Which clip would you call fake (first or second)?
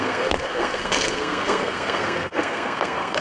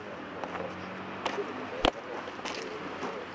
first